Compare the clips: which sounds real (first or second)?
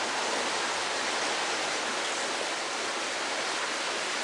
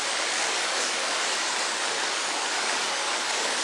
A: first